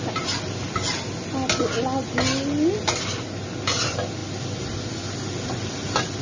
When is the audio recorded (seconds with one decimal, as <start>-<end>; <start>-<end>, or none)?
0.0-6.2